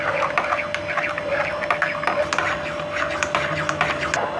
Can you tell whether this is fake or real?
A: real